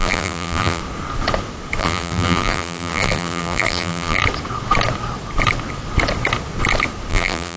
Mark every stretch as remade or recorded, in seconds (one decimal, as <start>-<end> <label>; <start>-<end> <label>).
0.0-0.8 remade; 0.8-1.8 recorded; 1.8-4.2 remade; 4.2-7.1 recorded; 7.1-7.6 remade